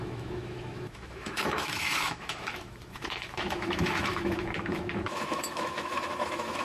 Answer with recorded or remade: remade